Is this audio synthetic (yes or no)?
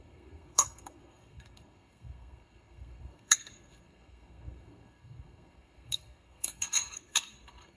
yes